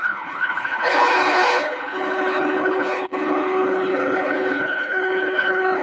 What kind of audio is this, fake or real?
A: fake